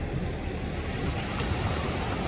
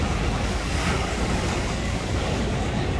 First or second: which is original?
first